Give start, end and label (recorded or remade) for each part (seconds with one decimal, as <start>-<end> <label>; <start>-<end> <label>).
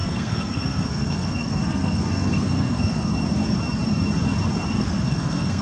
0.0-3.1 remade; 3.1-4.8 recorded; 4.8-5.6 remade